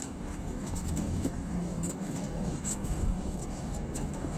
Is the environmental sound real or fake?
fake